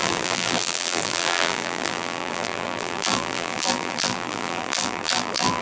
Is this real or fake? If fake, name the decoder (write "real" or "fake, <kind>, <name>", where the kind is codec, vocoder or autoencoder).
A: fake, vocoder, BigVGAN v2